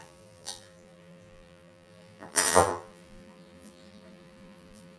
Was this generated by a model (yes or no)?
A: yes